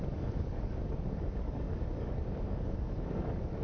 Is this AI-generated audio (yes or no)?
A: yes